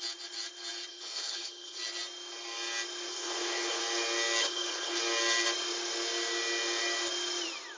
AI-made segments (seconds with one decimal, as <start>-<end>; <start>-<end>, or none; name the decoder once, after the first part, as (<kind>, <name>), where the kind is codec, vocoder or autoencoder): 0.9-1.8 (codec, HILCodec); 3.1-3.8; 4.4-5.0